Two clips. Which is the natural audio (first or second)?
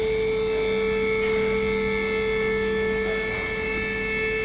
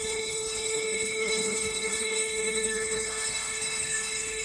first